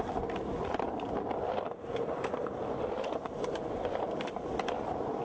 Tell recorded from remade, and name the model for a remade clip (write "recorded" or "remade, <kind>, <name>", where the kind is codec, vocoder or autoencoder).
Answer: recorded